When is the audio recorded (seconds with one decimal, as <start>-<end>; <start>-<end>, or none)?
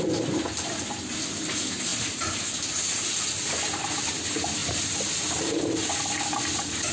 0.0-6.9